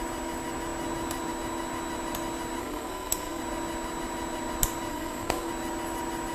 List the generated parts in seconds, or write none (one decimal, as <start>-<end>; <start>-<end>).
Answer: 2.6-3.4; 4.9-5.5